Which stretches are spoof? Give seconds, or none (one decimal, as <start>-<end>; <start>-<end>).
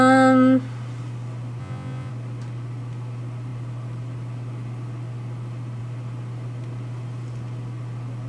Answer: 1.6-2.1